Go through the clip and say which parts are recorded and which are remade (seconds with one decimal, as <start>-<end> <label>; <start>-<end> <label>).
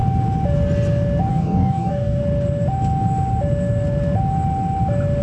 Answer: 0.0-1.3 recorded; 1.3-2.2 remade; 2.2-5.2 recorded